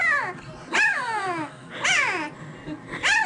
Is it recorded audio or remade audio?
recorded